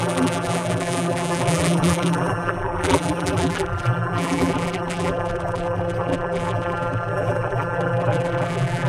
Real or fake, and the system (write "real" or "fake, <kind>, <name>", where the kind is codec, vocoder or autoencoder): fake, vocoder, BigVGAN v2